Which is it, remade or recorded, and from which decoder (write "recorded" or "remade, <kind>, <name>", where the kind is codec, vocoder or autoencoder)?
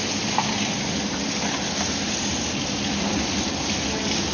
recorded